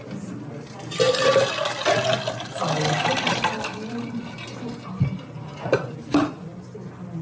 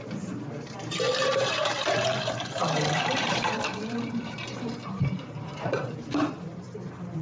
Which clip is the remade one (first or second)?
second